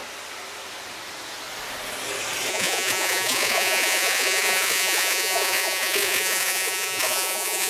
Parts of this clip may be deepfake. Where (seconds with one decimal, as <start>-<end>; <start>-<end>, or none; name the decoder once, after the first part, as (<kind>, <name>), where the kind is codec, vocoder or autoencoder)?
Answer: 2.5-7.7 (vocoder, Vocos)